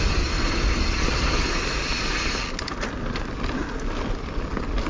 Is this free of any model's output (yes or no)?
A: yes